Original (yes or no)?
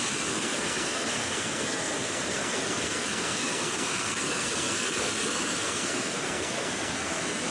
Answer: no